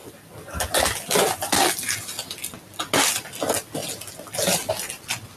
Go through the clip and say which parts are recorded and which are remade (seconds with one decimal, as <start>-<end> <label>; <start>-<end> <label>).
0.0-5.4 recorded